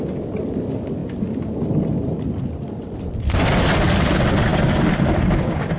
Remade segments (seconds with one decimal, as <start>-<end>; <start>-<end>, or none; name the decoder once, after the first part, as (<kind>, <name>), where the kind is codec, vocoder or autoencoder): none

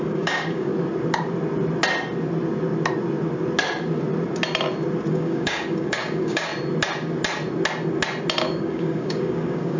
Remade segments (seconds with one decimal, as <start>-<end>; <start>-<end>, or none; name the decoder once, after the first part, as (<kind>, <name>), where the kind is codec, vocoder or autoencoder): 0.0-0.7 (codec, DAC); 5.1-6.5; 8.4-9.8